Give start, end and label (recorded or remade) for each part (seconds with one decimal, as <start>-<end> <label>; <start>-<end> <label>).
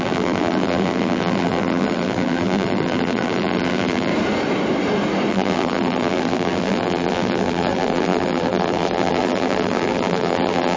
0.0-4.1 remade; 4.1-5.3 recorded; 5.3-10.8 remade